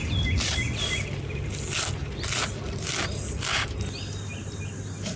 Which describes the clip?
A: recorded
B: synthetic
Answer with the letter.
A